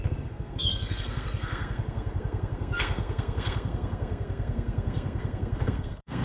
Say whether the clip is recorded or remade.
remade